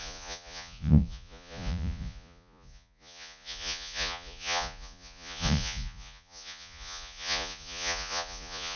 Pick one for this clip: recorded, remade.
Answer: remade